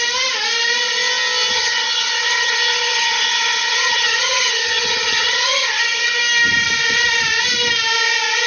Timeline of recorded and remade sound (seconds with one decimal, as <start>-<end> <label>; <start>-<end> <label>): 0.0-1.5 recorded; 1.5-6.2 remade; 6.2-8.5 recorded